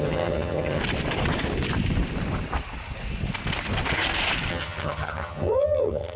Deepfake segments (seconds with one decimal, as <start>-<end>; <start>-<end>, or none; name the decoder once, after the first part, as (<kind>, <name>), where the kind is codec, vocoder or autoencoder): 0.0-0.8 (vocoder, HiFi-GAN); 4.5-6.2